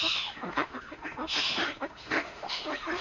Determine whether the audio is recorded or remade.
remade